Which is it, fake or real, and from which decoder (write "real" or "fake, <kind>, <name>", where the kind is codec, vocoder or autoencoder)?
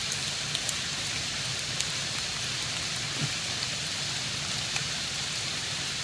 real